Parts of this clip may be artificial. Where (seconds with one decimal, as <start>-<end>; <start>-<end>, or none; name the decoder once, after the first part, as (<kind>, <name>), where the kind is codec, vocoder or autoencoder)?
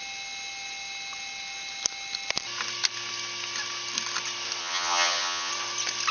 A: 4.6-5.5 (vocoder, HiFi-GAN)